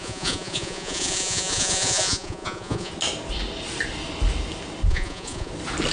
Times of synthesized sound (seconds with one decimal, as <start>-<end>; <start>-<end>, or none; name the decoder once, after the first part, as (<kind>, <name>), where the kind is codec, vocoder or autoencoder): 0.0-2.9 (vocoder, Vocos); 4.9-5.5